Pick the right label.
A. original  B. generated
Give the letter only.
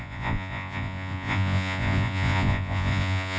B